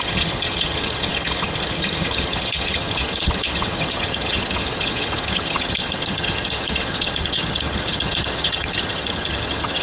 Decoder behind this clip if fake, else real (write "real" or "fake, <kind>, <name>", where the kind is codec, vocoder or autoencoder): fake, vocoder, HiFi-GAN